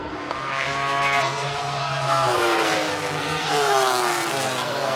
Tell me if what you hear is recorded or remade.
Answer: remade